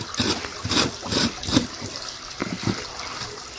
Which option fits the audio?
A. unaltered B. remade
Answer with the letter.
A